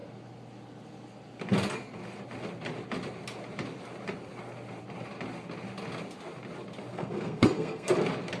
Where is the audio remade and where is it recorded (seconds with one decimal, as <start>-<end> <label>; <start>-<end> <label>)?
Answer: 0.0-6.9 recorded; 6.9-7.9 remade; 7.9-8.4 recorded